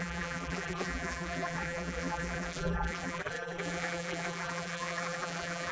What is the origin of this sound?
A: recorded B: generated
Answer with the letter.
B